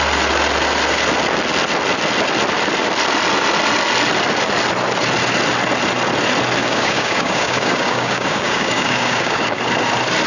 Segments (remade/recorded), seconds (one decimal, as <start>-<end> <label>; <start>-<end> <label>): 0.0-6.6 recorded; 6.6-9.6 remade; 9.6-10.3 recorded